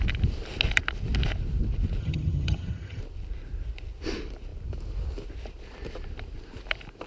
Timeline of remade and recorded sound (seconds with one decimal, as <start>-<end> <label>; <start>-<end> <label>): 0.0-2.0 recorded; 2.0-3.0 remade; 3.0-7.1 recorded